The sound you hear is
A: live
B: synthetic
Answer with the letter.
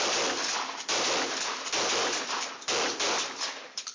A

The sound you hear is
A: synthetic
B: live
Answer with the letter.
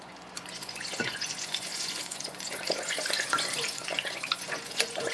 A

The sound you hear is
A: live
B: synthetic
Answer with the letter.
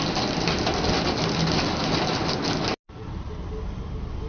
A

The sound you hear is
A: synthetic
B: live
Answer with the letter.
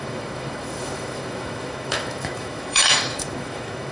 A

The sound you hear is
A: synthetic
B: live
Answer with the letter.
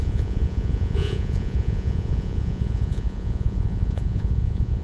A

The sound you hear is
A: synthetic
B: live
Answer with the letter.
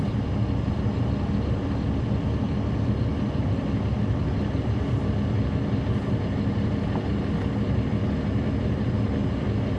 B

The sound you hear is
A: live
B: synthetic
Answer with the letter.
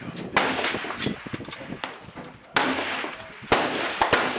A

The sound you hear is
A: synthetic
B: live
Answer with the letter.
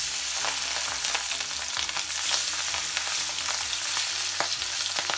B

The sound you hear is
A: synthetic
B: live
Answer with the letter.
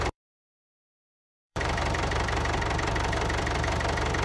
A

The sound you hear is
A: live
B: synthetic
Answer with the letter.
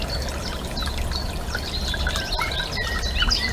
A